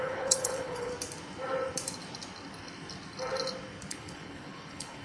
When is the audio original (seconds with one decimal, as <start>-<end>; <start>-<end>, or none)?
0.9-3.9